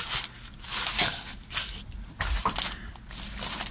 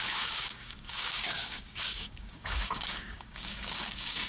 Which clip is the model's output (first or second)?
second